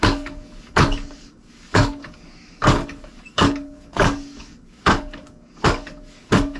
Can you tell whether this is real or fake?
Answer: fake